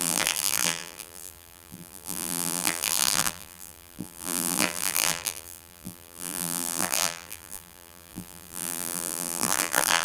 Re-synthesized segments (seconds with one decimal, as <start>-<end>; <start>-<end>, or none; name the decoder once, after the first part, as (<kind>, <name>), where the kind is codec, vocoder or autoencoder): 0.0-10.0 (vocoder, BigVGAN v2)